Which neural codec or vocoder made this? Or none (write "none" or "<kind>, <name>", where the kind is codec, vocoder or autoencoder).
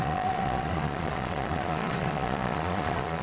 vocoder, Vocos